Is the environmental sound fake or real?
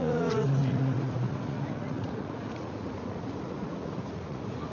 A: fake